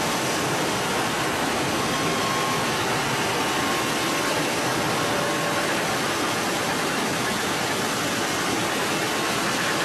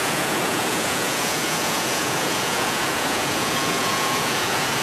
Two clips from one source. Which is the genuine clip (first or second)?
first